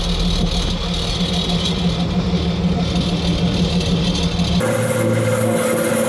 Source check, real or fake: real